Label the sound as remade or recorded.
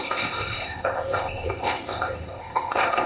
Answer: remade